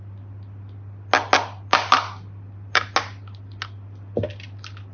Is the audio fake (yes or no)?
no